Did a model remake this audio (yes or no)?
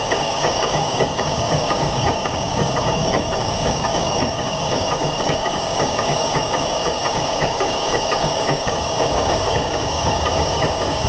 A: yes